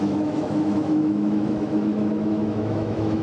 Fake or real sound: fake